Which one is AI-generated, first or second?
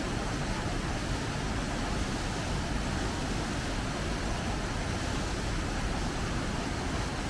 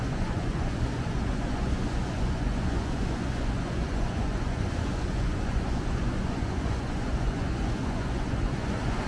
second